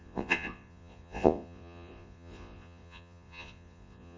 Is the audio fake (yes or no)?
yes